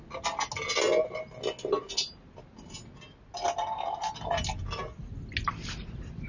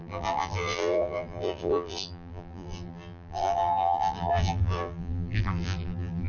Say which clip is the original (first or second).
first